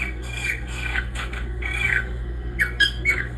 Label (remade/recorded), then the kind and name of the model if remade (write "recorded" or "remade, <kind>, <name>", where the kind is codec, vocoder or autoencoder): remade, codec, SNAC